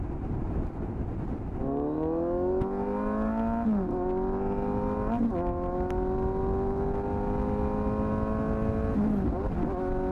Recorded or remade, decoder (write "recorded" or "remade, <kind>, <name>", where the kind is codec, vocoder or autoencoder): recorded